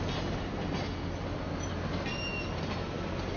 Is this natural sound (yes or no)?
yes